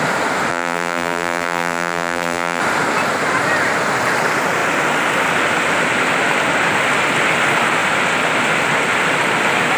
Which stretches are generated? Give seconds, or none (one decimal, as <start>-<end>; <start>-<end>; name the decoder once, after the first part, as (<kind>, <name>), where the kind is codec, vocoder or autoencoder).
0.5-2.6 (vocoder, BigVGAN v2)